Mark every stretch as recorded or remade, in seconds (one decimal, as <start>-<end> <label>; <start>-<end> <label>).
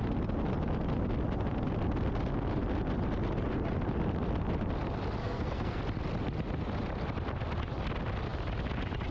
0.0-5.2 recorded; 5.2-5.8 remade; 5.8-9.1 recorded